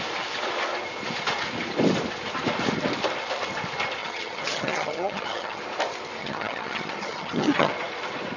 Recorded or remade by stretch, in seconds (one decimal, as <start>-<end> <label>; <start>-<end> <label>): 0.0-4.0 recorded; 4.0-5.6 remade; 5.6-6.2 recorded; 6.2-7.7 remade; 7.7-8.4 recorded